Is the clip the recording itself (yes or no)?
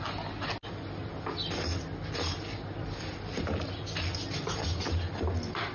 yes